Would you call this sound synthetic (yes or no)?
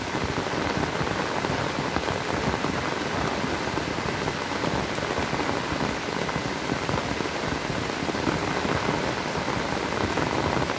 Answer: no